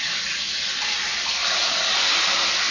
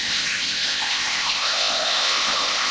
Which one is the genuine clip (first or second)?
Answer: first